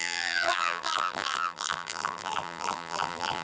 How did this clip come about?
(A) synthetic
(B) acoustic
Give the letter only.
A